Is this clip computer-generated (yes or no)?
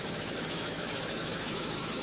yes